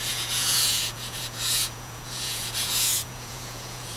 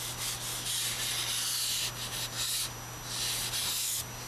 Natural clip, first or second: second